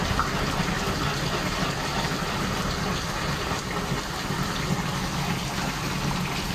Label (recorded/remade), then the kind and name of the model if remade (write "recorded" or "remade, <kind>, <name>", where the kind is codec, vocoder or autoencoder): recorded